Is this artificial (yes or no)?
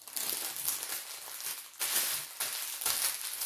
no